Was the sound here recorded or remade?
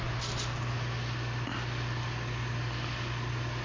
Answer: recorded